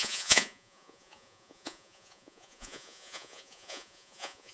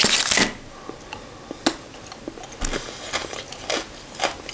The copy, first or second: first